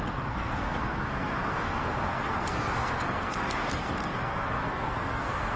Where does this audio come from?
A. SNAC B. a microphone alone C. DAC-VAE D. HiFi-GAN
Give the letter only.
A